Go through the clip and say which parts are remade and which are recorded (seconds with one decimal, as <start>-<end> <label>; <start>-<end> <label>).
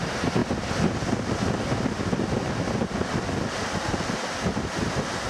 0.0-5.3 recorded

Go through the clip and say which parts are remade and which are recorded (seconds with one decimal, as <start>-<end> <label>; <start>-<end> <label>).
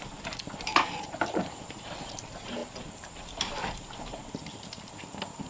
0.0-5.5 remade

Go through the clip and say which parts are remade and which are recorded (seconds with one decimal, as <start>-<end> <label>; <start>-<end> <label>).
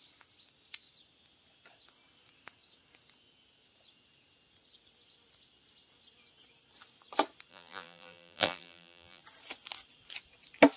0.0-7.5 recorded; 7.5-9.2 remade; 9.2-10.8 recorded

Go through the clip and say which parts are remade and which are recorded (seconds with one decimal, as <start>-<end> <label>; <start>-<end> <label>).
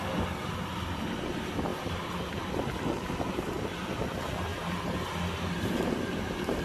0.0-1.7 recorded; 1.7-2.5 remade; 2.5-4.5 recorded; 4.5-6.6 remade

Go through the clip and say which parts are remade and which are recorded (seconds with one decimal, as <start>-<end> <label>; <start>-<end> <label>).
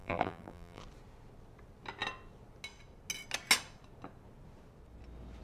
0.0-0.8 remade; 0.8-5.4 recorded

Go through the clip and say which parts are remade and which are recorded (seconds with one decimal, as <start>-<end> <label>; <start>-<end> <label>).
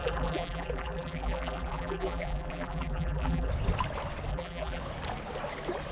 0.0-3.5 remade; 3.5-4.3 recorded; 4.3-4.8 remade; 4.8-5.9 recorded